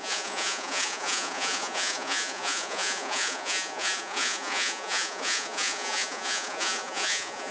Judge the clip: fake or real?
fake